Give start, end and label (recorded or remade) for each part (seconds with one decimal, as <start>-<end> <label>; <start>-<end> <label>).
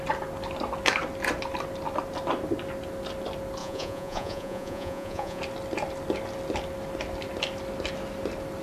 0.0-3.6 recorded; 3.6-5.4 remade; 5.4-8.6 recorded